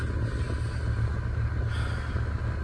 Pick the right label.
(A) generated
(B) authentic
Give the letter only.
B